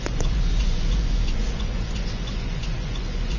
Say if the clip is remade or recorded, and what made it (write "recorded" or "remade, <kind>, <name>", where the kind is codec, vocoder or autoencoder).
remade, vocoder, Vocos